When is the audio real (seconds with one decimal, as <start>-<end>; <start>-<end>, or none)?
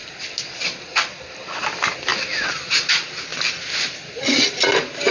0.0-5.1